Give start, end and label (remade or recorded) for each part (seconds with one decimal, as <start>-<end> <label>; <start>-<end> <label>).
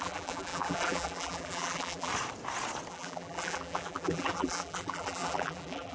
0.0-2.1 remade; 2.1-2.9 recorded; 2.9-5.9 remade